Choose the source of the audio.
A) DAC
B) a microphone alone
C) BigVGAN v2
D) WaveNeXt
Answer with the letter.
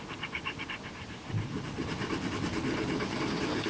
B